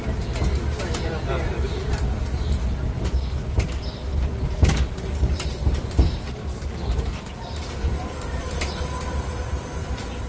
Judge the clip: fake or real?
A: real